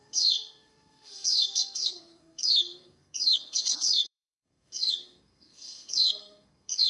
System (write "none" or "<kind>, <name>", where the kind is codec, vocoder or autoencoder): codec, SNAC